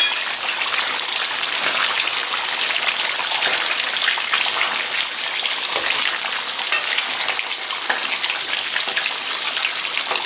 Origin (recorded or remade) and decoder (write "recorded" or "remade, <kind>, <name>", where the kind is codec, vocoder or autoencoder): recorded